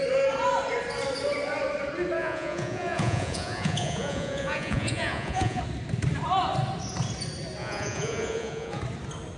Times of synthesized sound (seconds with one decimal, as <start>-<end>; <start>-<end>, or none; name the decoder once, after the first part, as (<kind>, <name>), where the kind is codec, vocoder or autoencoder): 2.2-5.6 (vocoder, Vocos); 7.6-8.8